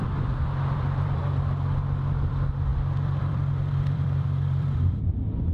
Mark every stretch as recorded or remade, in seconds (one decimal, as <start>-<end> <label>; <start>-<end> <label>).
0.0-1.2 remade; 1.2-2.3 recorded; 2.3-5.5 remade